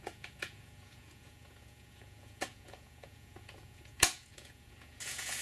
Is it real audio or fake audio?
fake